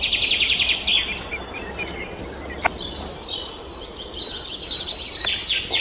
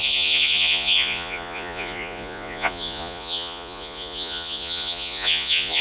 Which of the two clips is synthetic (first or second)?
second